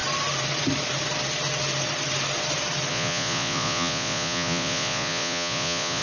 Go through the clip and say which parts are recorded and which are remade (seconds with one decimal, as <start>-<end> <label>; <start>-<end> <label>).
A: 0.0-2.9 recorded; 2.9-6.0 remade